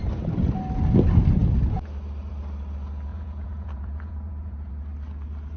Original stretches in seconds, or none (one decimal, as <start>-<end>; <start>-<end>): 0.0-3.1; 4.7-5.6